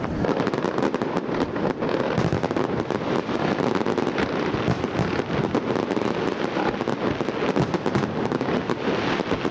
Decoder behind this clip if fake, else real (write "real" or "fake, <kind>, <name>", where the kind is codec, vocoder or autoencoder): real